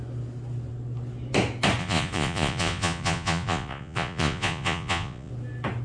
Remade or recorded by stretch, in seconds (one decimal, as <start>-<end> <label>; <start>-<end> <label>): 0.0-1.8 recorded; 1.8-5.3 remade; 5.3-5.8 recorded